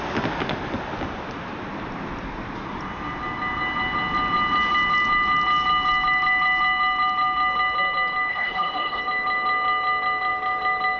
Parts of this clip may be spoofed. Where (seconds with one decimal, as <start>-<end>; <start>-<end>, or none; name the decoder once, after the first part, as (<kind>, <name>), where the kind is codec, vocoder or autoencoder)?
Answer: 8.3-9.0 (codec, HILCodec)